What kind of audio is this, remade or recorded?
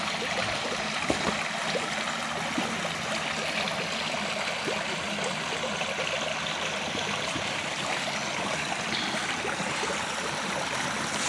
recorded